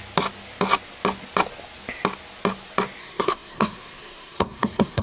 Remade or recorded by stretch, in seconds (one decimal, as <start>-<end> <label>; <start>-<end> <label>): 0.0-3.0 recorded; 3.0-5.0 remade